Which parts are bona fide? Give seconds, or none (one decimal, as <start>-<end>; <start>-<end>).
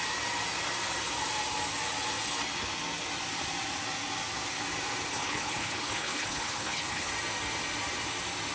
0.0-5.1; 7.1-8.5